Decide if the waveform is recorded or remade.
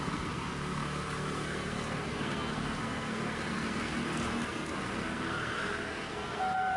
remade